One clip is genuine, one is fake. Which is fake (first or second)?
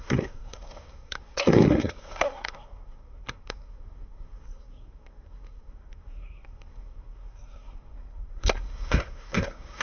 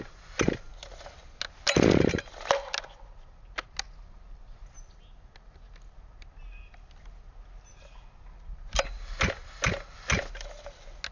first